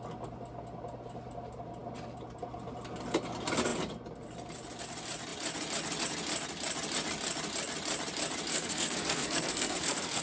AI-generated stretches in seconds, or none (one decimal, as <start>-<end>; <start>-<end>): 8.5-10.2